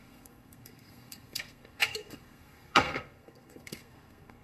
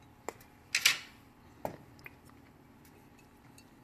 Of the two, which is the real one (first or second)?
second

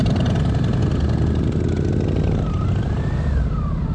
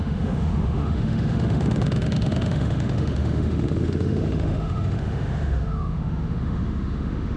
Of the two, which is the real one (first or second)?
first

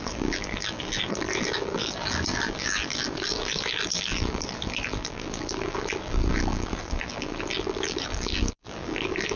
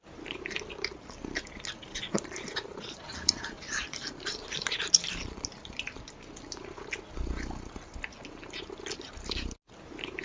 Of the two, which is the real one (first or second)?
second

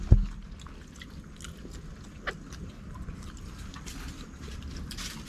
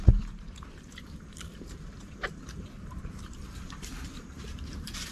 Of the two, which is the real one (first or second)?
first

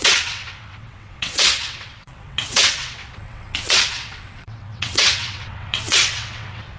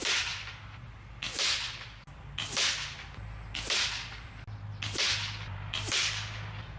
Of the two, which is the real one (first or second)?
second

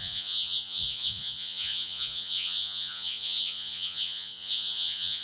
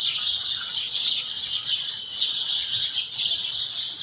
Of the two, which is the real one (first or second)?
second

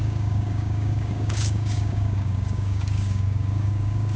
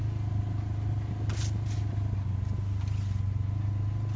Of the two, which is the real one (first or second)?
second